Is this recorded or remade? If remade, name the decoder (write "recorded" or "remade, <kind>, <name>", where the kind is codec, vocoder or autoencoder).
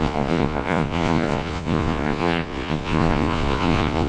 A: remade, vocoder, Vocos